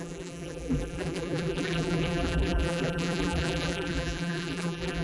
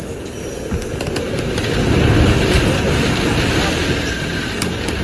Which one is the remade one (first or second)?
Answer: first